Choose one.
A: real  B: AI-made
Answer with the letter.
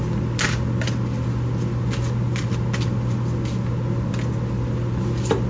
A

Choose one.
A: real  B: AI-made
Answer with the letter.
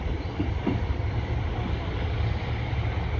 A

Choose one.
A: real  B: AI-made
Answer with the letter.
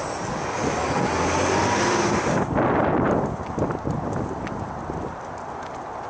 A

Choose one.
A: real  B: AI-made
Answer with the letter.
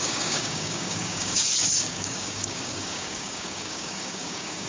B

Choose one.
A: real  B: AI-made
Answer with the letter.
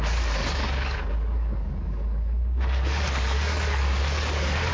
B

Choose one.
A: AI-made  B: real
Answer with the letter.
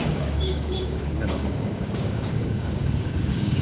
A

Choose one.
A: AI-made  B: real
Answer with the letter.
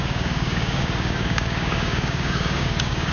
A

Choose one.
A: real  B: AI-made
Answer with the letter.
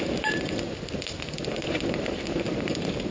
A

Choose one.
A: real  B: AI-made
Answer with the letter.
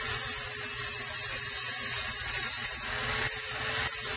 A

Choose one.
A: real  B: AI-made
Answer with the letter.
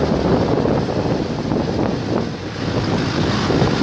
A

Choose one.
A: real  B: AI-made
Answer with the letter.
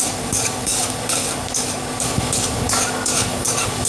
B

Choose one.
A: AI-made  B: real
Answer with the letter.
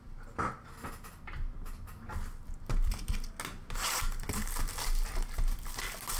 B